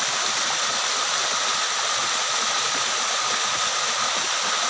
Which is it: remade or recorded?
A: recorded